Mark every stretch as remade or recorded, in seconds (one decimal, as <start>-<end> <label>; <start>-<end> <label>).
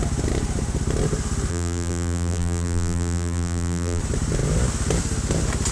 0.0-1.5 recorded; 1.5-4.0 remade; 4.0-5.7 recorded